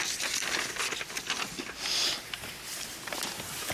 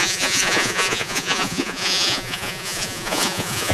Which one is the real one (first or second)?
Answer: first